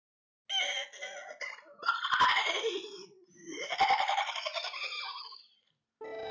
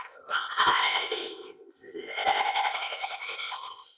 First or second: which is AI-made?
second